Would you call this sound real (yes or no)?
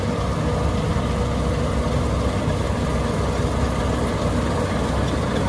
yes